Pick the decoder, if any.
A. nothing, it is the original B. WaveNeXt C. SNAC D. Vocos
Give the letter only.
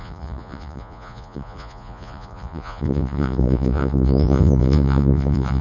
D